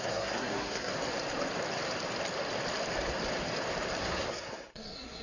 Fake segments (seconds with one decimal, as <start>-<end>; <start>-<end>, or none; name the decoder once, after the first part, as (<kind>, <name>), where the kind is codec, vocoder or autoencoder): 0.0-0.9 (codec, SNAC); 4.0-5.2